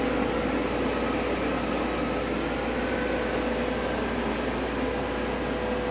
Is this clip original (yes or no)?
yes